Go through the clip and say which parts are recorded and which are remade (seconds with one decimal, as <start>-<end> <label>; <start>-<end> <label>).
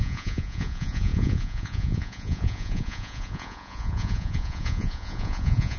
0.0-5.8 remade